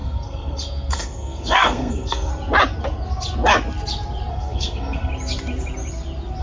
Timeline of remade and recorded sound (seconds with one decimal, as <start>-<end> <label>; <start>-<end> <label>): 0.0-2.3 remade; 2.3-4.3 recorded; 4.3-5.1 remade; 5.1-6.4 recorded